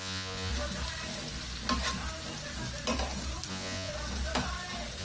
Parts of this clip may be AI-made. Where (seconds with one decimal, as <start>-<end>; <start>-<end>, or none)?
0.0-0.5; 3.5-3.9

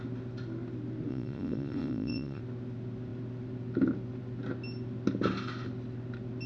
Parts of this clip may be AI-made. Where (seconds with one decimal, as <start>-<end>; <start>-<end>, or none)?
1.1-2.4

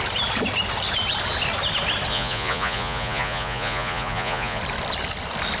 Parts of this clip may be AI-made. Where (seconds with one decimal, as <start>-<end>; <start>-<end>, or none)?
2.1-4.6

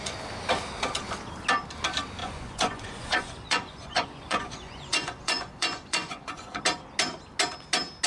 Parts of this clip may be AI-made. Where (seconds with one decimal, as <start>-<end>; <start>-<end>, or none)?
2.2-6.6

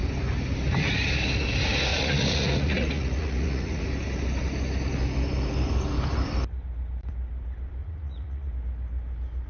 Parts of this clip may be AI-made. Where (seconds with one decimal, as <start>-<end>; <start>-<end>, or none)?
1.9-3.8; 7.8-8.5

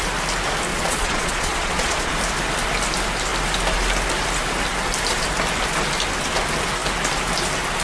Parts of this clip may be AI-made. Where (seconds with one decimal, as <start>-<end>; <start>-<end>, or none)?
0.7-2.1

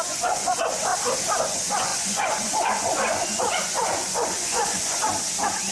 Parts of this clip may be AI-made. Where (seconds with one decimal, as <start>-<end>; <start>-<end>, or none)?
0.0-0.9; 1.4-5.0

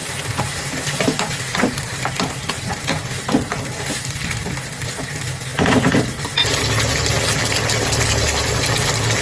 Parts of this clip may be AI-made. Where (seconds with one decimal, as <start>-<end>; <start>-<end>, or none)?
none